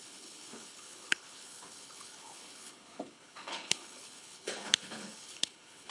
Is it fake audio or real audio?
fake